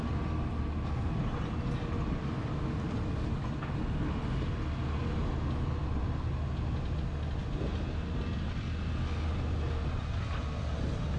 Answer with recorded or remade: recorded